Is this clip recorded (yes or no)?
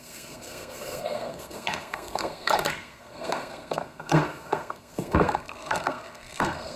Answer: no